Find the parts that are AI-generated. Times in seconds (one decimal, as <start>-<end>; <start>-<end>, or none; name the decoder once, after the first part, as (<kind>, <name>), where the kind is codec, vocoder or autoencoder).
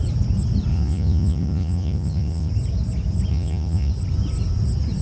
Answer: 0.7-2.5 (vocoder, Vocos); 3.3-3.9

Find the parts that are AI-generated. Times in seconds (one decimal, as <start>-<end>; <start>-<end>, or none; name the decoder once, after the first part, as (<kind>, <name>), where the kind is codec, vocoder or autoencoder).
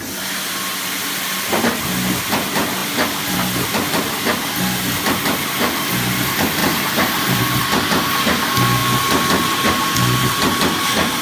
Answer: 2.8-3.5 (vocoder, BigVGAN v2); 6.6-7.4